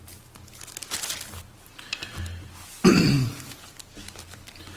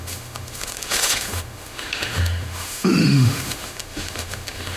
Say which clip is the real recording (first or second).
first